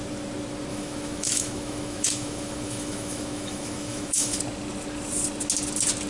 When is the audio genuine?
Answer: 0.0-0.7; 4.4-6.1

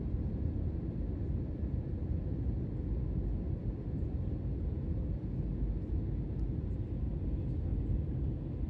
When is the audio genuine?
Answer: 0.0-8.7